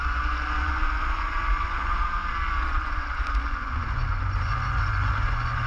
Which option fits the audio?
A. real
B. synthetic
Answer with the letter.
B